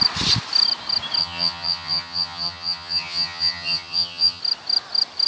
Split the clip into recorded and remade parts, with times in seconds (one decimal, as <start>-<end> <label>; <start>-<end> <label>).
0.0-1.2 recorded; 1.2-4.4 remade; 4.4-5.3 recorded